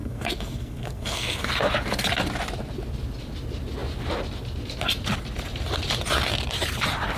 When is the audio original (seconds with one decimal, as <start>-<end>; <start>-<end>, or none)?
1.5-7.2